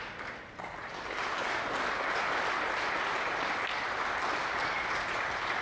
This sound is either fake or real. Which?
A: real